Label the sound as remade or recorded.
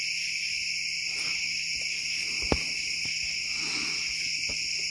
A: recorded